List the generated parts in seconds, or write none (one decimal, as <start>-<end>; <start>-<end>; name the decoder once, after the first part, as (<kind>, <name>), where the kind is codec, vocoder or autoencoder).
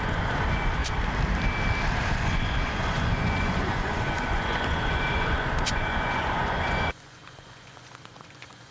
0.0-0.8 (vocoder, Vocos); 2.1-8.7